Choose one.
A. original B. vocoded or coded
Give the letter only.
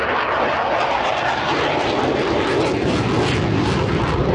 A